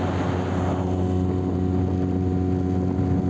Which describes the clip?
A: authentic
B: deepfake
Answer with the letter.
A